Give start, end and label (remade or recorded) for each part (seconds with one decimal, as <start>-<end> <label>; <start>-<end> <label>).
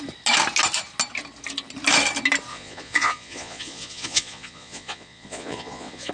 0.0-2.5 recorded; 2.5-6.1 remade